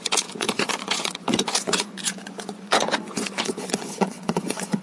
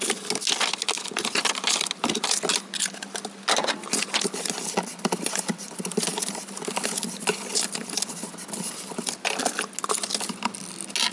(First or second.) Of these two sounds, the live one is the second